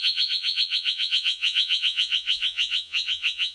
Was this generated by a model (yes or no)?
yes